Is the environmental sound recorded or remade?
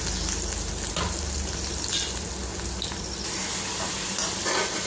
recorded